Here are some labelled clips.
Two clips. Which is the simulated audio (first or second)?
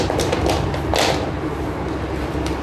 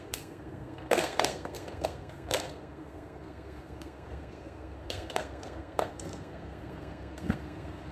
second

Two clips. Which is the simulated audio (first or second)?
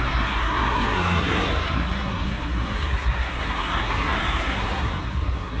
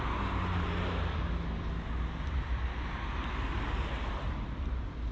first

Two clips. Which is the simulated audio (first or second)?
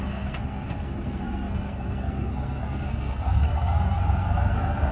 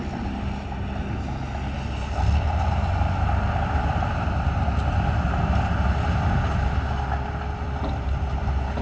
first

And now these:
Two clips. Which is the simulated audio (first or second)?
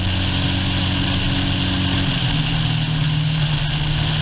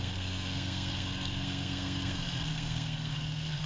second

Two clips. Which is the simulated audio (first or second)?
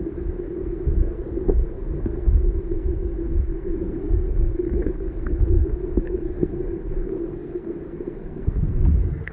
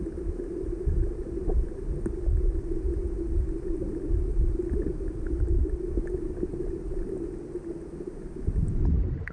first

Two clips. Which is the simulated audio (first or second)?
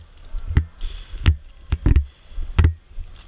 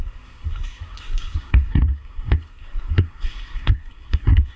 second